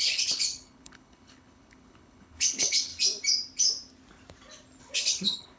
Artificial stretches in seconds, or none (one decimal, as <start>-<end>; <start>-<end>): 0.0-2.9; 4.8-5.6

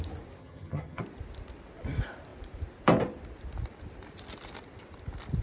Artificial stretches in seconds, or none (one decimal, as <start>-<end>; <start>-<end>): 0.4-1.0